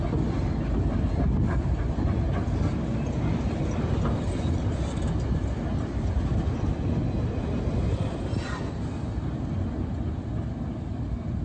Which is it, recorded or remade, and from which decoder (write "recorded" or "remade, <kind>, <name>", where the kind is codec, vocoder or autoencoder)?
recorded